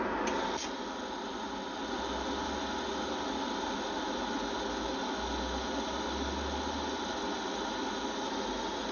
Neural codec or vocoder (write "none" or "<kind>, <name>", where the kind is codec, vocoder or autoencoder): none